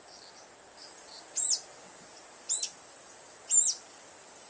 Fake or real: real